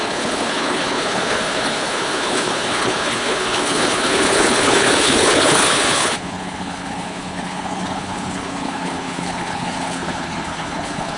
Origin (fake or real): fake